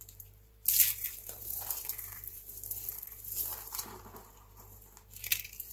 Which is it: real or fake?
fake